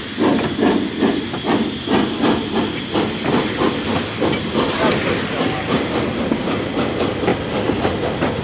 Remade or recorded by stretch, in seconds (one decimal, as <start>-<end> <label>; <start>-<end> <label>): 0.0-8.4 recorded